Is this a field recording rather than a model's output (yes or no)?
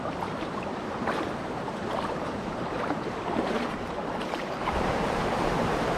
no